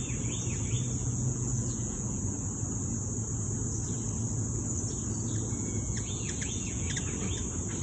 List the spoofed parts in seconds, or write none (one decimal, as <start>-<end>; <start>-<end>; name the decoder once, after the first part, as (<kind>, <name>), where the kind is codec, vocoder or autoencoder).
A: 1.0-2.2 (vocoder, Vocos); 5.6-6.9